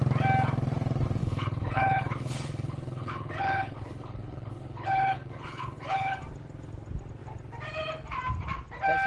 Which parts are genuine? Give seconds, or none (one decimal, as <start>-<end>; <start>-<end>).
0.0-1.2; 6.2-9.1